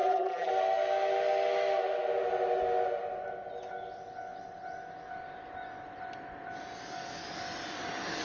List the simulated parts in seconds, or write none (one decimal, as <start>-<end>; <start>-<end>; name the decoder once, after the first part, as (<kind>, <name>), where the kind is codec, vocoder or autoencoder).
0.0-0.5 (vocoder, BigVGAN v2)